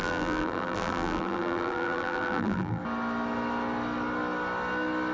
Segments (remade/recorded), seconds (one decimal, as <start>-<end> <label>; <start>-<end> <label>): 0.0-2.8 remade; 2.8-5.1 recorded